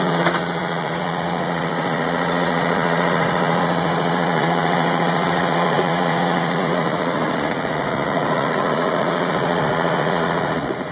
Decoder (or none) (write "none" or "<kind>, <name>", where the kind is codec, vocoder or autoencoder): vocoder, Vocos